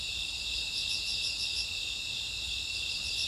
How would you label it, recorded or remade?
remade